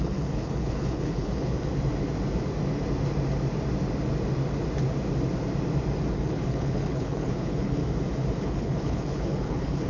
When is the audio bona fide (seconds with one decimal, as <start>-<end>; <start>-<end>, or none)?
1.5-6.1; 7.8-8.4